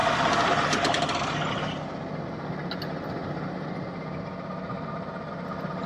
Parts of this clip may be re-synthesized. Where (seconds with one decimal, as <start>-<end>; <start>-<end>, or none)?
none